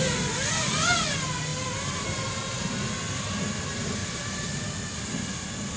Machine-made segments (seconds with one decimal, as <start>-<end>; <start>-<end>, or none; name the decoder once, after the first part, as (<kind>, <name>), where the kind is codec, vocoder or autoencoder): 1.5-2.6 (vocoder, BigVGAN v2); 4.0-4.5